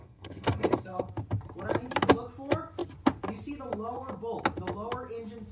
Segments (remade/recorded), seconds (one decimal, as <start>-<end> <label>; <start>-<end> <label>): 0.0-1.1 remade; 1.1-5.5 recorded